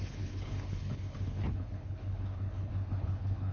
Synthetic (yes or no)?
yes